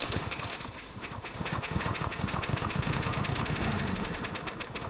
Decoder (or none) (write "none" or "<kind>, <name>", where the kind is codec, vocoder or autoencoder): autoencoder, DAC-VAE